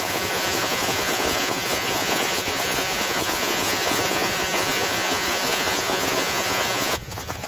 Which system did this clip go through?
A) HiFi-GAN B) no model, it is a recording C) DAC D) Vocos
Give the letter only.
D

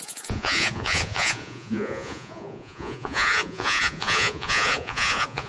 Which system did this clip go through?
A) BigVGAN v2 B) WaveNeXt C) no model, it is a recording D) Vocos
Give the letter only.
D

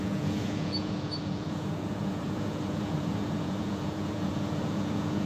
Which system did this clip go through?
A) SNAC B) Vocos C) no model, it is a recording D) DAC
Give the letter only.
B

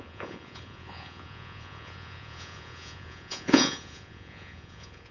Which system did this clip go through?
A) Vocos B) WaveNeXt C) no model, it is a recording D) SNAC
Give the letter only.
A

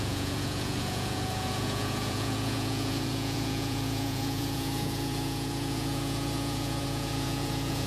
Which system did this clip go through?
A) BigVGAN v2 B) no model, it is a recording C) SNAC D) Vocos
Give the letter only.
D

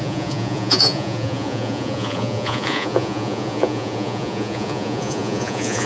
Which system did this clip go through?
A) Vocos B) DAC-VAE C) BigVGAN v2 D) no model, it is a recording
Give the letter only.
A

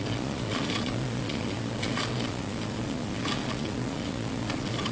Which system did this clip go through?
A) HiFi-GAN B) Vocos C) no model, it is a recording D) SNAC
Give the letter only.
B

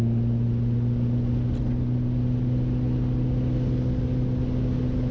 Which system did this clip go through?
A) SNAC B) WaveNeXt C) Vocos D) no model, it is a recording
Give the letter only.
D